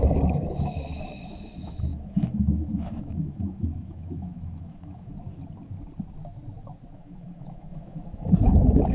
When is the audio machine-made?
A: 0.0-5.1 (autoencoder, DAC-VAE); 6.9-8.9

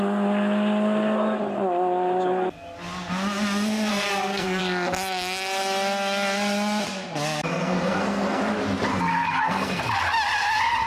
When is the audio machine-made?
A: 3.9-4.6 (codec, SNAC); 7.5-8.4; 8.9-9.8

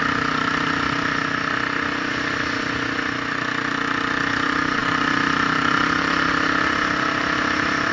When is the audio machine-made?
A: none

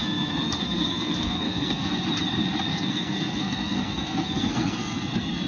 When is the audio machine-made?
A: 0.0-1.9 (codec, SNAC); 2.7-5.5